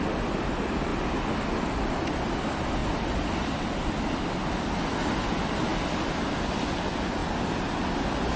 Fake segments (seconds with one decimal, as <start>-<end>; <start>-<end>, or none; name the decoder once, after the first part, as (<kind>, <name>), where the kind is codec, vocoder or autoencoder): none